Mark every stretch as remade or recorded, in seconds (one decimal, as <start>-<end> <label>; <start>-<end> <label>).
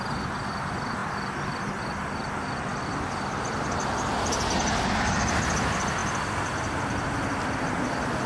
0.0-8.3 recorded